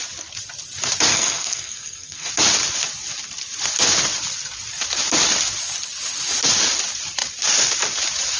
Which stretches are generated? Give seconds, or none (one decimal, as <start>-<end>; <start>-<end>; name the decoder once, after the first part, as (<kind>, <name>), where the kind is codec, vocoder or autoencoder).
1.1-2.3 (codec, SNAC)